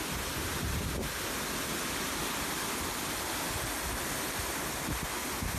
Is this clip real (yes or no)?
yes